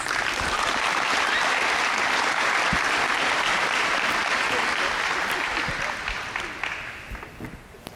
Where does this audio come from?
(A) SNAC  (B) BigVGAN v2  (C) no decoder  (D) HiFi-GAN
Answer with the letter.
C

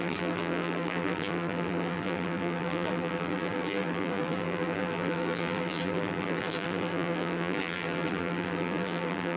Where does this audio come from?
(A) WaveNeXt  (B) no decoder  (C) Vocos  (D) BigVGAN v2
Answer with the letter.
D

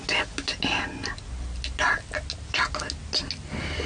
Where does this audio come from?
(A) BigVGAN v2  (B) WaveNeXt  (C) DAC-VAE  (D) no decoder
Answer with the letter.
D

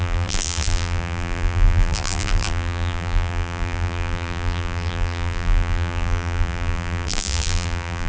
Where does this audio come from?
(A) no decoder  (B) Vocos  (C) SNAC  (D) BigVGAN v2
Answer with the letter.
D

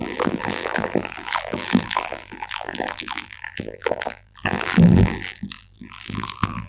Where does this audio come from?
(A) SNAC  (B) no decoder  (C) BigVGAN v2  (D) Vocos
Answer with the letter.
C